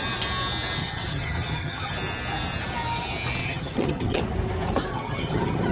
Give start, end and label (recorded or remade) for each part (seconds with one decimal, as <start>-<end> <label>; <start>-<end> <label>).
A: 0.0-0.8 recorded; 0.8-1.9 remade; 1.9-3.4 recorded; 3.4-4.2 remade; 4.2-4.9 recorded; 4.9-5.7 remade